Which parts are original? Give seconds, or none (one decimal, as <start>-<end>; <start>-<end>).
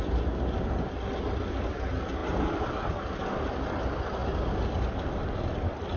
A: 0.0-6.0